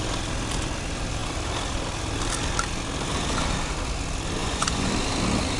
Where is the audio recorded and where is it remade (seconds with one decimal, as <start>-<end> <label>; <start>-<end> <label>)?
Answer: 0.0-4.4 recorded; 4.4-4.9 remade; 4.9-5.6 recorded

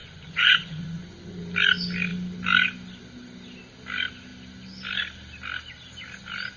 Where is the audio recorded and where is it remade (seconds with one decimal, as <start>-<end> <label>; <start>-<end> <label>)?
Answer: 0.0-1.4 remade; 1.4-6.6 recorded

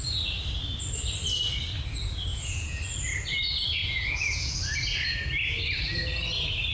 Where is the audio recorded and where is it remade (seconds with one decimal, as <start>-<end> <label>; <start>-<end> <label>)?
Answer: 0.0-2.3 recorded; 2.3-2.8 remade; 2.8-3.8 recorded; 3.8-4.5 remade; 4.5-6.7 recorded

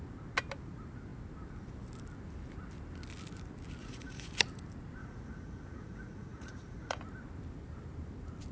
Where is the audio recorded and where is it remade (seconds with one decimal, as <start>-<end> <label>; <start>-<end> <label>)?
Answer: 0.0-3.8 recorded; 3.8-4.3 remade; 4.3-5.0 recorded; 5.0-7.0 remade; 7.0-8.5 recorded

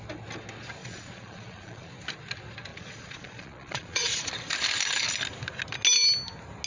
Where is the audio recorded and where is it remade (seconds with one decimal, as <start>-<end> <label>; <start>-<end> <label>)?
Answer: 0.0-0.8 recorded; 0.8-1.9 remade; 1.9-2.7 recorded; 2.7-4.3 remade; 4.3-6.7 recorded

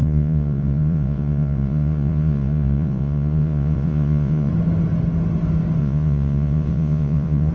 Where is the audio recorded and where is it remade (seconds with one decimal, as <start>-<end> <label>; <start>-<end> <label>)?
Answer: 0.0-4.5 remade; 4.5-5.8 recorded; 5.8-7.5 remade

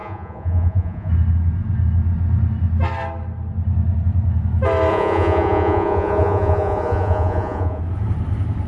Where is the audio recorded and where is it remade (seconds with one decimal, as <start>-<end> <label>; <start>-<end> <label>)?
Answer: 0.0-1.1 remade; 1.1-4.9 recorded; 4.9-7.8 remade; 7.8-8.7 recorded